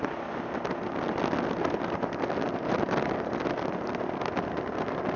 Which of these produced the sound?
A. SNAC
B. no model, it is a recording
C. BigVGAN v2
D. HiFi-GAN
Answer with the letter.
B